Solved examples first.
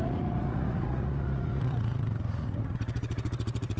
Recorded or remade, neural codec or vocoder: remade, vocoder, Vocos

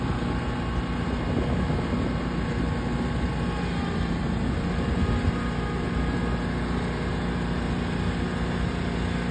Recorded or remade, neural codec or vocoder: recorded